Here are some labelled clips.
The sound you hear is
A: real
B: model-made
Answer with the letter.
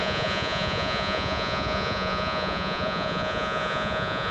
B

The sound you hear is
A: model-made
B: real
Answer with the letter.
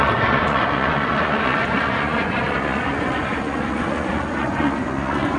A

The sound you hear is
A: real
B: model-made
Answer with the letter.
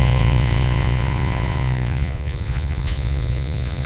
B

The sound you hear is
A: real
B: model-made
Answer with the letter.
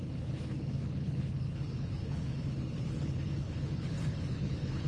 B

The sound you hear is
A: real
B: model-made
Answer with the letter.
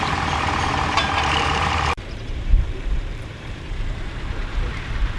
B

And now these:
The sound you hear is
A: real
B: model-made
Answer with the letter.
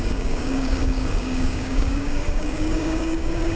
B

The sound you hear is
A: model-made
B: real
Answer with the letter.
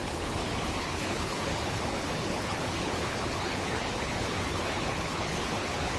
A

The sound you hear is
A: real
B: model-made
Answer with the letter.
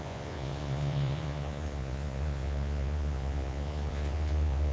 B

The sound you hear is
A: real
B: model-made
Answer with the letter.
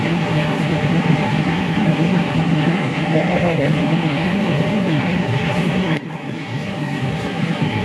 B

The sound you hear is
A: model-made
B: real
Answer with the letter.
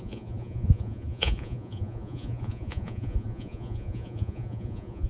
A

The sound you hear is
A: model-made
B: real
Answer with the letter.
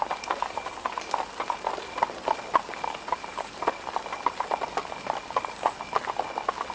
B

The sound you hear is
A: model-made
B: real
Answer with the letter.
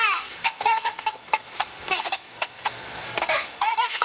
A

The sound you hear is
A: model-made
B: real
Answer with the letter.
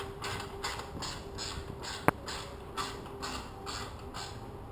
B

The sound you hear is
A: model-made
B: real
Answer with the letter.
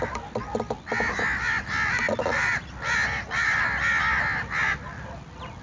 B